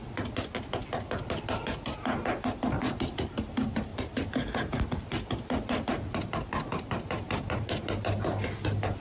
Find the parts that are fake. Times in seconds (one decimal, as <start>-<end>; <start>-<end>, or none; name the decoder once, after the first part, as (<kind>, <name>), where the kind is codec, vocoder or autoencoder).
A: 0.8-1.6 (vocoder, BigVGAN v2); 3.9-7.9